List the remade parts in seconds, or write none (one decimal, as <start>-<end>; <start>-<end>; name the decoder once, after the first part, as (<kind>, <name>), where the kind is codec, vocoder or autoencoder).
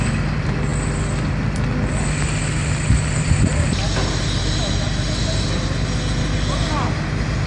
none